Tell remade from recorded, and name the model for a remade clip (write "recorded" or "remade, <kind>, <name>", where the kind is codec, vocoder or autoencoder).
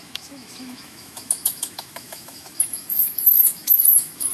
remade, autoencoder, DAC-VAE